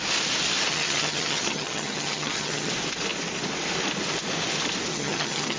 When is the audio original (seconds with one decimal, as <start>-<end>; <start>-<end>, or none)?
0.0-0.7; 2.7-4.9